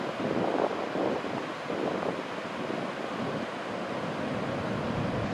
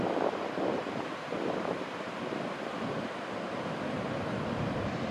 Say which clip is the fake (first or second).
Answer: second